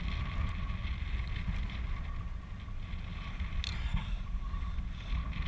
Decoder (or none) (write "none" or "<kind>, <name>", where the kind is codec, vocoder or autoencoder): none